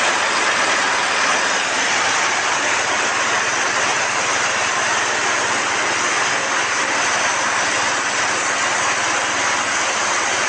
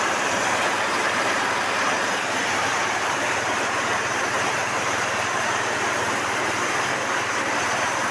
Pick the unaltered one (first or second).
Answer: first